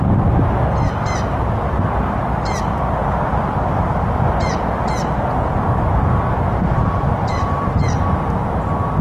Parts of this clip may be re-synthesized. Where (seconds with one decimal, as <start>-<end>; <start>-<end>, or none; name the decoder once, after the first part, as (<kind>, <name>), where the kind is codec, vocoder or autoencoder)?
3.0-3.9 (vocoder, BigVGAN v2); 7.3-8.0